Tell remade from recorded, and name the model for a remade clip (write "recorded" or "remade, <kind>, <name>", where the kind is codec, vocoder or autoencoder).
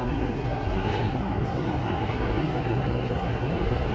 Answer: remade, codec, SNAC